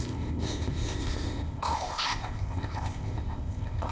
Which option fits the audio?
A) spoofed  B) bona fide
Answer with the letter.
A